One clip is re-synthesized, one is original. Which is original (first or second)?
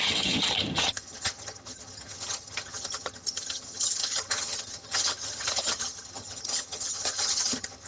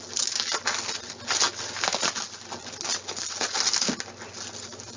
second